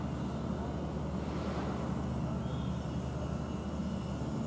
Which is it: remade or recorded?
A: recorded